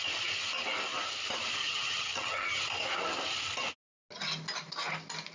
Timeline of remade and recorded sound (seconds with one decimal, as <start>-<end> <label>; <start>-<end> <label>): 0.0-1.6 recorded; 1.6-2.6 remade; 2.6-5.3 recorded